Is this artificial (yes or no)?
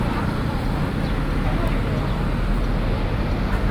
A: no